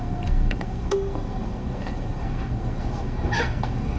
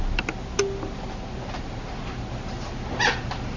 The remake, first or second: first